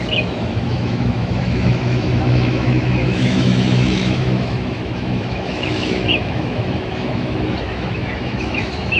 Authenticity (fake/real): fake